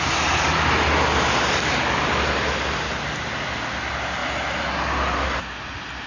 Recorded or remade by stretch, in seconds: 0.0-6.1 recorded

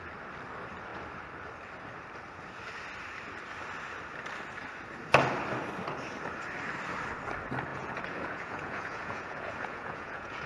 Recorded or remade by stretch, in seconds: 0.0-7.7 recorded; 7.7-10.5 remade

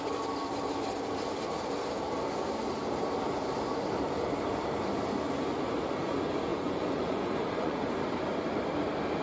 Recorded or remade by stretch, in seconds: 0.0-6.5 recorded; 6.5-7.9 remade; 7.9-9.2 recorded

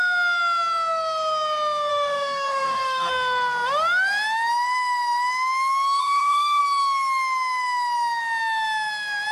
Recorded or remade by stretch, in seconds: 0.0-1.9 recorded; 1.9-3.1 remade; 3.1-6.0 recorded; 6.0-6.6 remade; 6.6-9.3 recorded

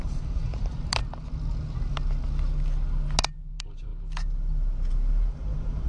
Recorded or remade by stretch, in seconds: 0.0-1.0 remade; 1.0-3.5 recorded; 3.5-3.9 remade; 3.9-5.3 recorded; 5.3-5.9 remade

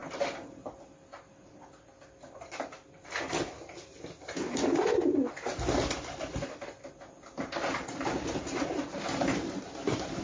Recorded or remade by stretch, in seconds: 0.0-10.2 recorded

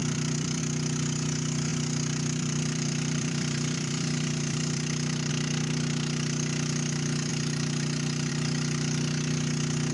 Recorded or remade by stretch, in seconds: 0.0-0.6 remade; 0.6-1.7 recorded; 1.7-5.3 remade; 5.3-9.9 recorded